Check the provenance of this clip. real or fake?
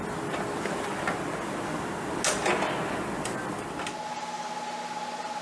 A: real